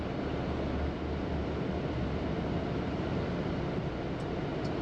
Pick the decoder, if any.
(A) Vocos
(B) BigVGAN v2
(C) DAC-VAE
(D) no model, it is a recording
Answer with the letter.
D